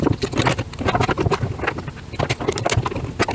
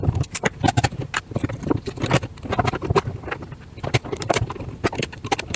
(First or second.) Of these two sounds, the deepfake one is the second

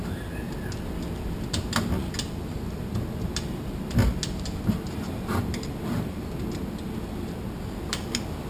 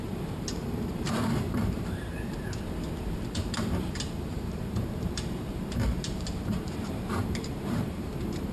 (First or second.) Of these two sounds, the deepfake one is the second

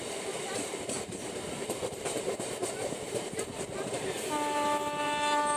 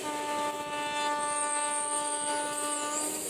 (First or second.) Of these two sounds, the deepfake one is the first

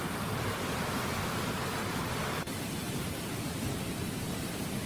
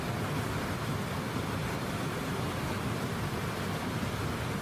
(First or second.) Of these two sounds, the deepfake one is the first